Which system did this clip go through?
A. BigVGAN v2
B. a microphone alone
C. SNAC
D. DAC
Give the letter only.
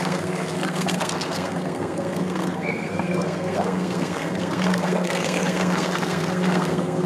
C